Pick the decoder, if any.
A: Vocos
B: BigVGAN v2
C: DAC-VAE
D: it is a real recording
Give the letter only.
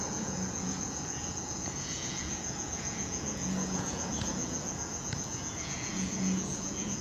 A